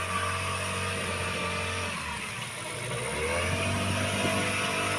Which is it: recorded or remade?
recorded